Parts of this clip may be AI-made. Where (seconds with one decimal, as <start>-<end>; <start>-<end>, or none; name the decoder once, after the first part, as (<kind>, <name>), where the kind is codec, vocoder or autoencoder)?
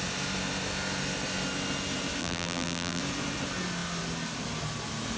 2.2-3.0 (vocoder, BigVGAN v2)